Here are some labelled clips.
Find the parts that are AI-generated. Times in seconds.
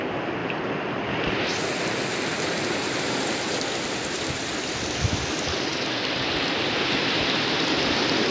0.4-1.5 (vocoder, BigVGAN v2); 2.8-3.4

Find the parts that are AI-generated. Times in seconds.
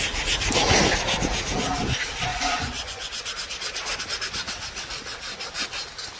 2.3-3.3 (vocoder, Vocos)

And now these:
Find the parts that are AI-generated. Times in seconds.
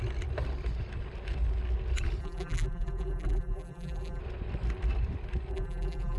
2.2-4.2 (vocoder, BigVGAN v2); 5.5-6.2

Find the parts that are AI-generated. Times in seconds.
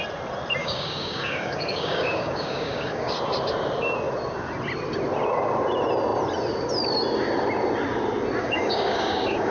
0.6-3.1 (codec, DAC); 8.4-9.5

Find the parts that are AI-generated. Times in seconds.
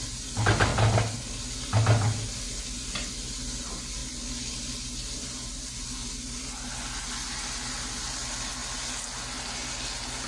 none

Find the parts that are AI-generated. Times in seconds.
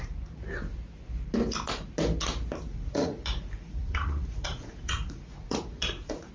2.7-6.3 (vocoder, Vocos)